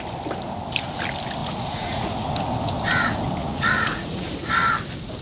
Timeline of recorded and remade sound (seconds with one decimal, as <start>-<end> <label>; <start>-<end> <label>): 0.0-1.4 recorded; 1.4-2.3 remade; 2.3-3.4 recorded; 3.4-4.3 remade; 4.3-5.2 recorded